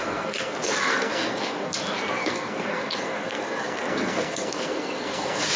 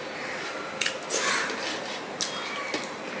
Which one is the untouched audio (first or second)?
second